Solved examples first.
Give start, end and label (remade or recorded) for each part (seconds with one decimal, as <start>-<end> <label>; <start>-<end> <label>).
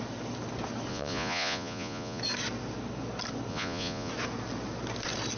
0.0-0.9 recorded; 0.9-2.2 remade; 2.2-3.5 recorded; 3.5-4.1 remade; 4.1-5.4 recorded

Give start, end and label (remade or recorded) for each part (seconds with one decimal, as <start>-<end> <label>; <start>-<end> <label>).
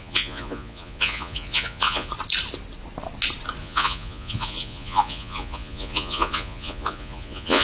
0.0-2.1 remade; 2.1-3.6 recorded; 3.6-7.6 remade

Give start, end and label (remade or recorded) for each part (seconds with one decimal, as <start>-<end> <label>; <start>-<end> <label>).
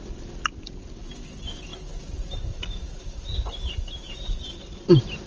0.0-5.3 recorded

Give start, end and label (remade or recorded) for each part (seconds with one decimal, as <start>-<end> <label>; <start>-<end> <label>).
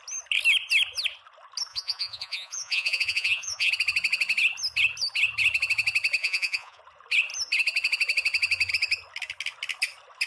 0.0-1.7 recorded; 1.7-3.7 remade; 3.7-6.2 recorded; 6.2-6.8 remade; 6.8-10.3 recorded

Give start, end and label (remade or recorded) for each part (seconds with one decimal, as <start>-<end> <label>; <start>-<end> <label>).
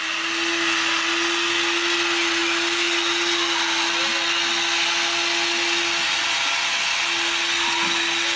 0.0-8.4 recorded